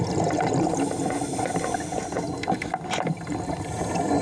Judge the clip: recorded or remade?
recorded